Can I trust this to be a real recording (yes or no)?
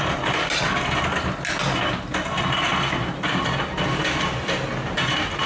yes